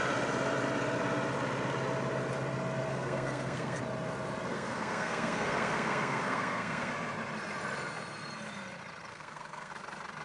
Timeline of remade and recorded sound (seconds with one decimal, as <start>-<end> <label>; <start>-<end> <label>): 0.0-2.9 recorded; 2.9-3.8 remade; 3.8-4.5 recorded; 4.5-6.9 remade; 6.9-9.1 recorded; 9.1-9.7 remade; 9.7-10.2 recorded